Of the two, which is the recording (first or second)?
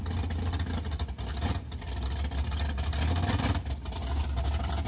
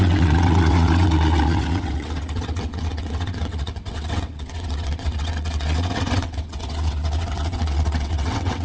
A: first